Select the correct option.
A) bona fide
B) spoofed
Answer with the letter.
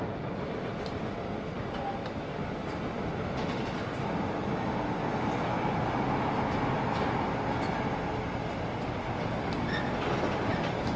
A